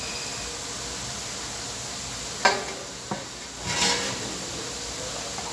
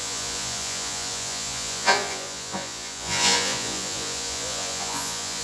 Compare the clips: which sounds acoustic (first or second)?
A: first